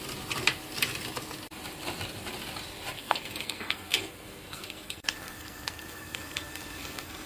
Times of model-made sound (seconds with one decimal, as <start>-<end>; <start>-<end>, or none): 3.0-7.3